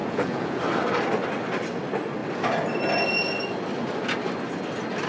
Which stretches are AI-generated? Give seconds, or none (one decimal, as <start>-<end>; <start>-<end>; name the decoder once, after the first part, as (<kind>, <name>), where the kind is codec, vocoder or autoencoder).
0.0-0.6 (vocoder, Vocos)